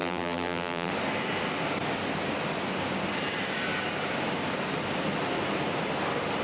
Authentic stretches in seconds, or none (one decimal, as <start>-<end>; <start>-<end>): 0.9-6.4